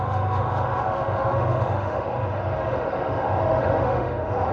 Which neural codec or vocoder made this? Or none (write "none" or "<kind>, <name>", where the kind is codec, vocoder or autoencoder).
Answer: autoencoder, DAC-VAE